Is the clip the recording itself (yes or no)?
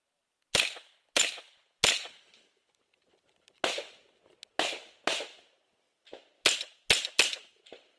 yes